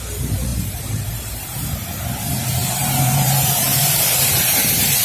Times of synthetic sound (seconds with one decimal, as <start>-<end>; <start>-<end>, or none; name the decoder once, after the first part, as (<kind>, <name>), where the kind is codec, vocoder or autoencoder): 0.5-1.3 (vocoder, BigVGAN v2); 2.6-5.0